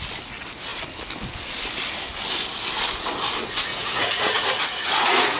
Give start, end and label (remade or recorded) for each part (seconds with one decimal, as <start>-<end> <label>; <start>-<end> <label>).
0.0-3.7 recorded; 3.7-5.4 remade